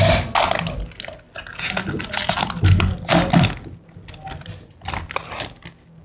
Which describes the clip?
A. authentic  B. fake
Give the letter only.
A